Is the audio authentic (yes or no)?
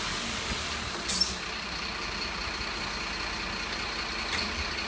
yes